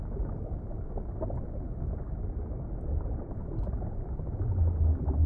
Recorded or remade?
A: recorded